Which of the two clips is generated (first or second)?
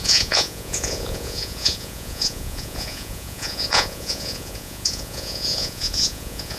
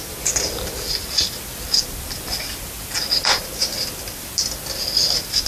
first